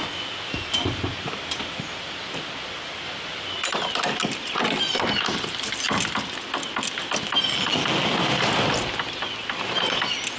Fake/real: real